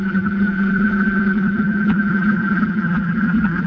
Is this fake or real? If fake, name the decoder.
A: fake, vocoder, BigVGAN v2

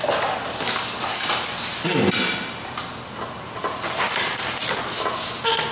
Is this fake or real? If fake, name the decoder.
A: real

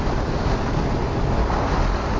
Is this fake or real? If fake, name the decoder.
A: real